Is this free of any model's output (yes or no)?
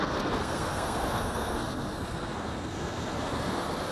no